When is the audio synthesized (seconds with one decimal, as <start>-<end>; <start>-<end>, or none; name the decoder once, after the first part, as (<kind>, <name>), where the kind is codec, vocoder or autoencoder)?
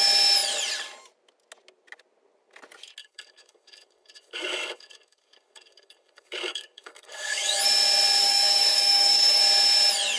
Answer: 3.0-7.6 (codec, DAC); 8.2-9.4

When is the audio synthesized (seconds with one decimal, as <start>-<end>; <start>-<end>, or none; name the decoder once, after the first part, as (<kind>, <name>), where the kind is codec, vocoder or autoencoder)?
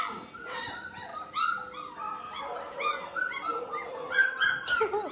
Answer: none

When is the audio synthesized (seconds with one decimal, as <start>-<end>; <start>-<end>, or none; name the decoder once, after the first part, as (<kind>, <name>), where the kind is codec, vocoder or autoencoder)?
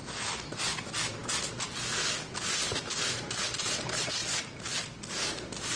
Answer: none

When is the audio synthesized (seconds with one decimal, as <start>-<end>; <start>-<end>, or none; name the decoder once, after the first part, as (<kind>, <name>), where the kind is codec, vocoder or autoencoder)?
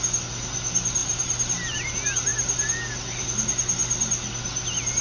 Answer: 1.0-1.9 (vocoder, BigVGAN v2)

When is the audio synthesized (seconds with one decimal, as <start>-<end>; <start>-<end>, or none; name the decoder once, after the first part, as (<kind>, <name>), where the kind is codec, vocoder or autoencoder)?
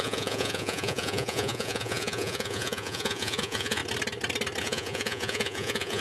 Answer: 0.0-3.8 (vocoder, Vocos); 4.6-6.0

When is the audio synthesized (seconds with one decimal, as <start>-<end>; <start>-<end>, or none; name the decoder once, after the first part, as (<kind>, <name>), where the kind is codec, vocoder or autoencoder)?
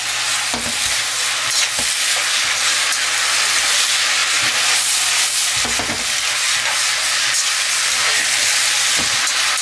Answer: none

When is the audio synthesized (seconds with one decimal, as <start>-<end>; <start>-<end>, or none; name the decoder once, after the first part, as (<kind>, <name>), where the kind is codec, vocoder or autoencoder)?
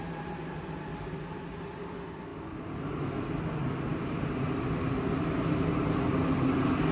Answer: none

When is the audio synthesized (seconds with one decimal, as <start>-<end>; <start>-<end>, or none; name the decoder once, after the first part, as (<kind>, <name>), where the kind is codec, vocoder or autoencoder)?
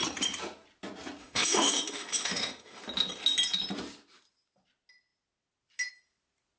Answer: 1.2-2.8 (autoencoder, DAC-VAE)